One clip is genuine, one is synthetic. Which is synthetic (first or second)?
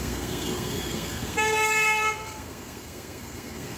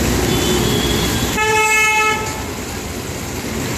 first